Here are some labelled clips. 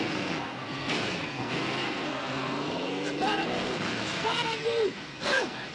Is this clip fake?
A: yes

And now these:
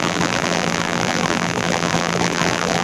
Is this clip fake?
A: yes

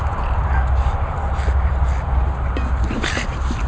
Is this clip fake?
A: no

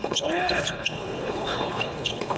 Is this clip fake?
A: yes